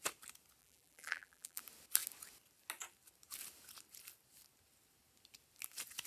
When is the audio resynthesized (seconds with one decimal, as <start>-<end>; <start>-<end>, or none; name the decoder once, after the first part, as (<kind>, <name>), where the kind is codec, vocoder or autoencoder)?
0.6-1.6 (vocoder, BigVGAN v2)